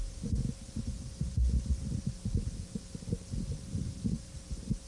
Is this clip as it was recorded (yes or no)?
yes